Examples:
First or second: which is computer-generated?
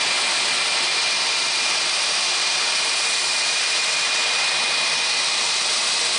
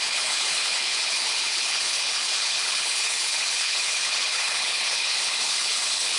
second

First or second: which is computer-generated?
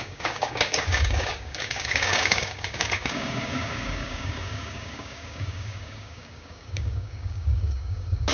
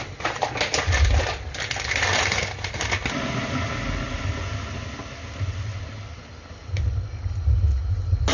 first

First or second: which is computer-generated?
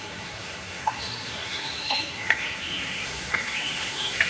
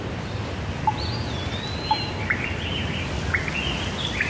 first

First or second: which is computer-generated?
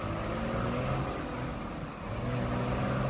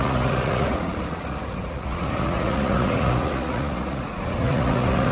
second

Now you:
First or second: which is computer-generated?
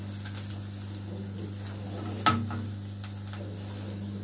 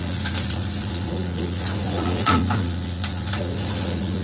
second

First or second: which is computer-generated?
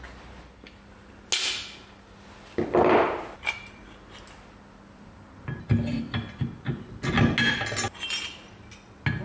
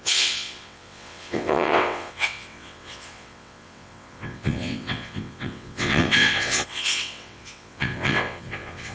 second